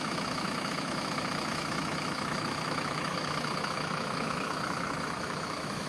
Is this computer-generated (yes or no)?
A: yes